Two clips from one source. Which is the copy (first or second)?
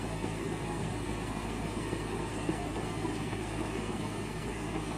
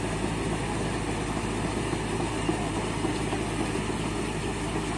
first